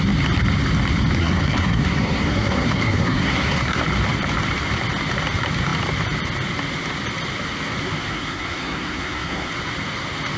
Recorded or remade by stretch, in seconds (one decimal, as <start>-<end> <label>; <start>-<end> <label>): 0.0-1.2 recorded; 1.2-3.8 remade; 3.8-8.1 recorded; 8.1-9.5 remade; 9.5-10.4 recorded